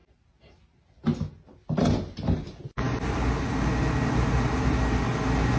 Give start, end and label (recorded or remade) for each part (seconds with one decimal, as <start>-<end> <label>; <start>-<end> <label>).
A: 0.0-5.6 recorded